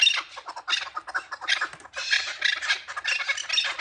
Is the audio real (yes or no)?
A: yes